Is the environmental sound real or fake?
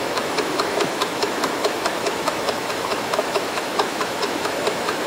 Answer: fake